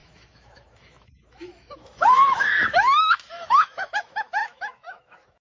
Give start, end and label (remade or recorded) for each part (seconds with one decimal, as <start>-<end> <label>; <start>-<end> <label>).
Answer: 0.0-5.4 remade